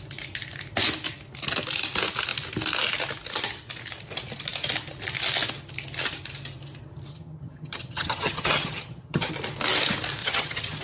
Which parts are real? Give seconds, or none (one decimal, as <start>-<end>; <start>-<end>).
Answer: 0.0-7.1; 9.3-10.2